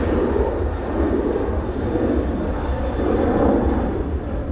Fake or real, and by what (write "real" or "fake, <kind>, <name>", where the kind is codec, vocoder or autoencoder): real